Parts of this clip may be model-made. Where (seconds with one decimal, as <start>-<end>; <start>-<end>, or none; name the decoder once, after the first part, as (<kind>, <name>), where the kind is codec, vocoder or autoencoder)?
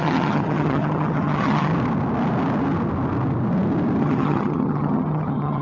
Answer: 0.0-1.7 (vocoder, HiFi-GAN); 4.0-5.6